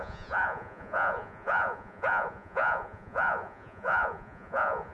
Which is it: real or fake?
fake